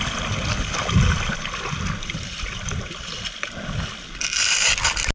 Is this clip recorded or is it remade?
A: recorded